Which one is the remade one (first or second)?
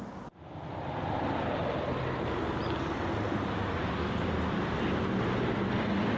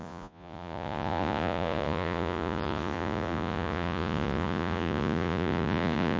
second